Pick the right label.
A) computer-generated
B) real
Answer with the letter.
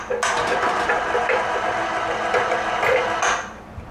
B